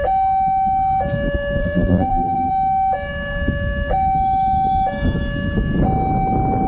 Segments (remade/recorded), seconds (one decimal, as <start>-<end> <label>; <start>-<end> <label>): 0.0-1.6 recorded; 1.6-2.5 remade; 2.5-6.7 recorded